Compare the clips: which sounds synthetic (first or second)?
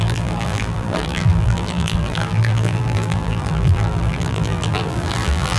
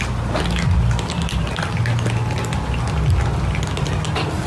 first